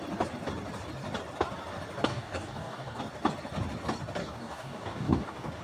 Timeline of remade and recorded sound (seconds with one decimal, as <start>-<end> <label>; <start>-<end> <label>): 0.0-2.1 recorded; 2.1-3.0 remade; 3.0-4.2 recorded; 4.2-5.6 remade